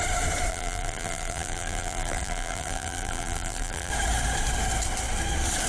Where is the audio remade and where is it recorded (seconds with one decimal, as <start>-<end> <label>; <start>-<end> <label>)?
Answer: 0.0-0.5 recorded; 0.5-3.9 remade; 3.9-5.7 recorded